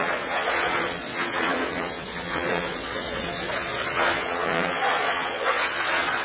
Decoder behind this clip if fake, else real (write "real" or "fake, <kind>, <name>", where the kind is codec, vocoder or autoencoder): fake, vocoder, Vocos